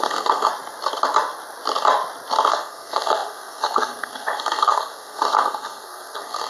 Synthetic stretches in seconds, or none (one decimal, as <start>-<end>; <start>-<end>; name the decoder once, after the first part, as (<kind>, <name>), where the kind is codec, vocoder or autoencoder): 0.0-0.5 (codec, SNAC); 2.5-6.5